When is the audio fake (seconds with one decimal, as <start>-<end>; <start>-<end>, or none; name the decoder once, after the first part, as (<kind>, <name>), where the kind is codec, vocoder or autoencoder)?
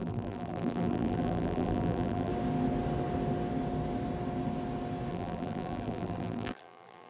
0.0-2.3 (vocoder, BigVGAN v2); 5.1-7.1